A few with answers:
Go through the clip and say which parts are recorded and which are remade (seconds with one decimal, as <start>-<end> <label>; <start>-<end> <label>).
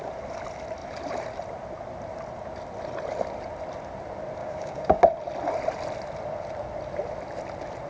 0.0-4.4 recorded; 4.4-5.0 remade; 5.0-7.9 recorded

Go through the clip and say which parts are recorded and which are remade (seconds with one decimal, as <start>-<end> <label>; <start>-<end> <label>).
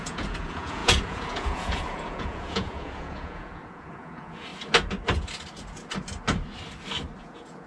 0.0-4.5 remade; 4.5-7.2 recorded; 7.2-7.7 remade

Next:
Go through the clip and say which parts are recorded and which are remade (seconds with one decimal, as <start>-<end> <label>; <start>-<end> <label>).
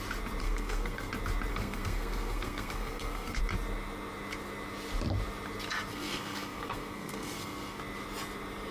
0.0-0.4 recorded; 0.4-1.1 remade; 1.1-1.5 recorded; 1.5-3.4 remade; 3.4-5.9 recorded; 5.9-7.8 remade; 7.8-8.7 recorded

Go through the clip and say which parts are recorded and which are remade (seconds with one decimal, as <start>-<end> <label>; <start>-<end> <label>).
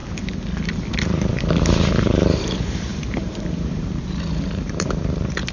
0.0-0.9 recorded; 0.9-5.5 remade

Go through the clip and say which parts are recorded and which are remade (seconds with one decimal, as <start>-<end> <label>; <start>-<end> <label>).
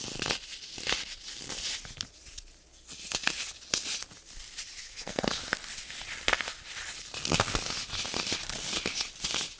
0.0-4.8 recorded; 4.8-5.4 remade; 5.4-9.6 recorded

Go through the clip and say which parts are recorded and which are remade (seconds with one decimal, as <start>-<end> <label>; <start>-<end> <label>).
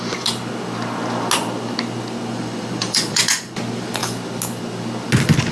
0.0-2.3 recorded; 2.3-3.6 remade; 3.6-5.5 recorded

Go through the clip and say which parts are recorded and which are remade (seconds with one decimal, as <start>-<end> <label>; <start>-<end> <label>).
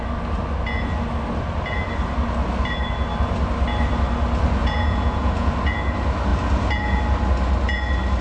0.0-4.6 recorded; 4.6-5.5 remade; 5.5-8.2 recorded